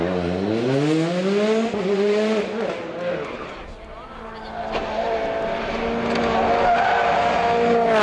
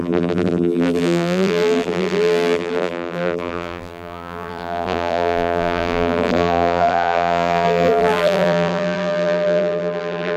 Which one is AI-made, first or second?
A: second